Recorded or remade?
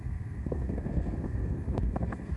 remade